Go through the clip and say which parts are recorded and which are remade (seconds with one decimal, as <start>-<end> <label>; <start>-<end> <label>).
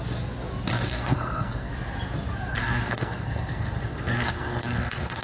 0.0-0.7 recorded; 0.7-1.7 remade; 1.7-2.5 recorded; 2.5-5.2 remade